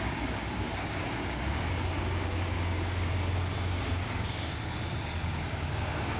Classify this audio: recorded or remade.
remade